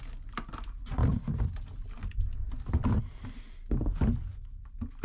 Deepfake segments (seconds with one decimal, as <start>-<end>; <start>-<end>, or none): none